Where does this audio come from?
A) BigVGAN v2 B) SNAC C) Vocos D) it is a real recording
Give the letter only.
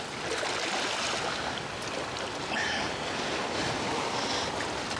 D